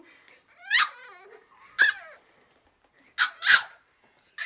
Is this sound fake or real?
real